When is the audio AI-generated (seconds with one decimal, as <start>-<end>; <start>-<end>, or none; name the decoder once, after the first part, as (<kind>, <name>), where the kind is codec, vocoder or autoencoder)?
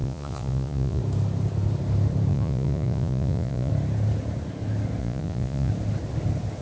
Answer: 0.0-1.0 (vocoder, Vocos); 2.3-3.7; 5.0-5.7